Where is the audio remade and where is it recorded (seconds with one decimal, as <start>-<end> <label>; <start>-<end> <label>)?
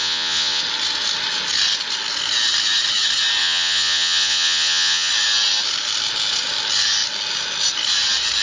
0.0-0.6 remade; 0.6-3.4 recorded; 3.4-5.1 remade; 5.1-8.4 recorded